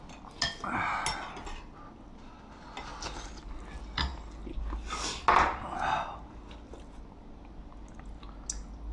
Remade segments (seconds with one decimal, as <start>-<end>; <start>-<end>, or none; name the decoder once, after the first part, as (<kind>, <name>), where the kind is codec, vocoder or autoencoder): none

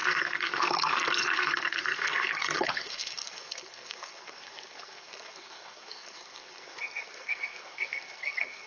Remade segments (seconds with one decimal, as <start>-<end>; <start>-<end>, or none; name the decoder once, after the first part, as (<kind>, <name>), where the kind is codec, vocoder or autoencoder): 0.0-8.7 (codec, SNAC)

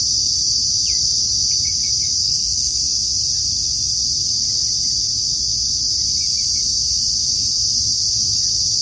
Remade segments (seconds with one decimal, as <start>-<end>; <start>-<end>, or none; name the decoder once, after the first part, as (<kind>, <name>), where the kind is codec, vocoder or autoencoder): 2.2-2.8 (codec, SNAC)

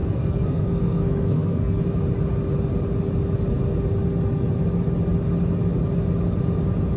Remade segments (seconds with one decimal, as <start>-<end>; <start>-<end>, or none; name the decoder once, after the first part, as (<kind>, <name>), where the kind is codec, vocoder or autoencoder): 0.0-1.8 (codec, SNAC)